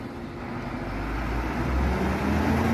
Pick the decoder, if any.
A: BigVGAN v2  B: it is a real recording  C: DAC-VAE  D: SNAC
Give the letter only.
B